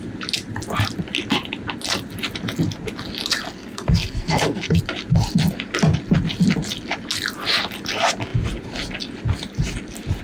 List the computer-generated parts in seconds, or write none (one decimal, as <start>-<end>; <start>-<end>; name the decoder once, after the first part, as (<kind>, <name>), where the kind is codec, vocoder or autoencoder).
3.6-4.8 (codec, SNAC)